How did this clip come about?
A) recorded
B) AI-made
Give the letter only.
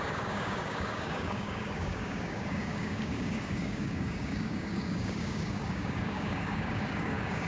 B